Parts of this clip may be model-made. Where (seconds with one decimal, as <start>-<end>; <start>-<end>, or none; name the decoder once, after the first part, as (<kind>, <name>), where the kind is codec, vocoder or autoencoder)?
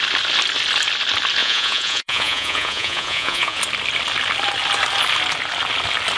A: 1.4-3.6 (vocoder, Vocos)